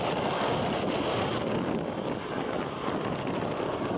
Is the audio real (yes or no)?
yes